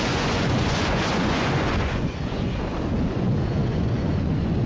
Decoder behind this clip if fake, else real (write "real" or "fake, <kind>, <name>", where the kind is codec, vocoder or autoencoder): fake, vocoder, Vocos